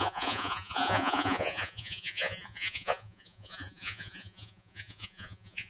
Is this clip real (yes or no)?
no